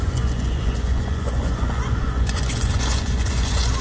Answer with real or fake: fake